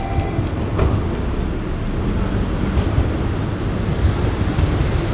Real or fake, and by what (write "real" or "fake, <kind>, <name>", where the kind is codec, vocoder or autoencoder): real